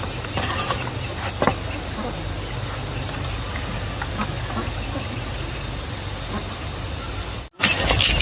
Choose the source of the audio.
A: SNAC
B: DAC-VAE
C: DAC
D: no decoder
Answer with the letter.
D